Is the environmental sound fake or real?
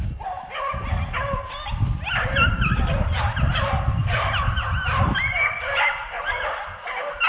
real